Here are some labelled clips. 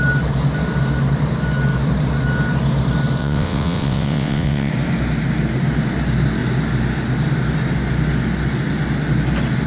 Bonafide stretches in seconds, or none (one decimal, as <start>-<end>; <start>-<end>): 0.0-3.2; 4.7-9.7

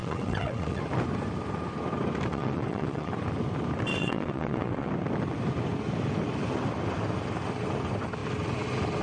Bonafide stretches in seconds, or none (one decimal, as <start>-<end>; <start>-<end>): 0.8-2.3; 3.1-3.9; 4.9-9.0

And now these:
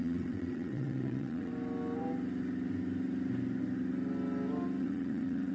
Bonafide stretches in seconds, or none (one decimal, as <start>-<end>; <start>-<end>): 1.5-4.8

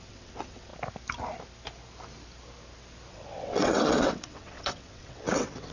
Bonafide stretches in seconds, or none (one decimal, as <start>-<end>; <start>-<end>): 0.7-3.1

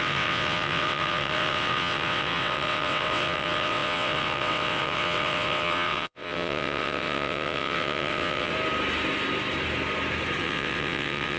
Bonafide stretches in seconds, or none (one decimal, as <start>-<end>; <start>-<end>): 8.5-10.4

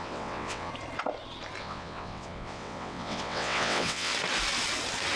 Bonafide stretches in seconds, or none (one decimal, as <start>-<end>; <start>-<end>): 0.7-1.6; 4.1-5.2

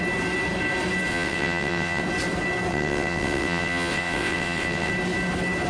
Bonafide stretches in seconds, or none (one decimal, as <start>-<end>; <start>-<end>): 0.0-1.1; 2.0-2.7; 4.9-5.7

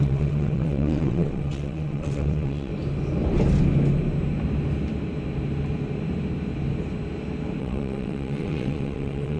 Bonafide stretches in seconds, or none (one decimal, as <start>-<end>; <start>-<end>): 2.7-7.6